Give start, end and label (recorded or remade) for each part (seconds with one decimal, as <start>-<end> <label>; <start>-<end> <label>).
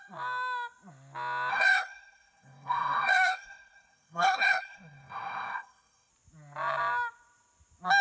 0.0-1.5 recorded; 1.5-6.1 remade; 6.1-8.0 recorded